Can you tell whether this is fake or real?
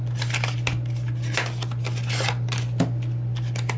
real